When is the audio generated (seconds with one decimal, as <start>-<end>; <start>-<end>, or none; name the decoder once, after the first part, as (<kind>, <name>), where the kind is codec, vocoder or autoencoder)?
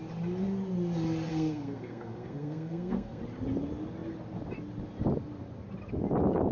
1.3-3.2 (codec, SNAC)